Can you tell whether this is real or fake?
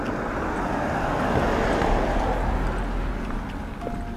real